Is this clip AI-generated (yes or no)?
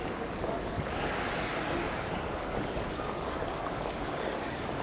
yes